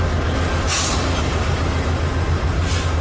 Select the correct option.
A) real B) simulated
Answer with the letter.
A